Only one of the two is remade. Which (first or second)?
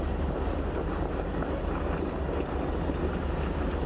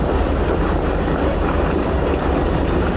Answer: second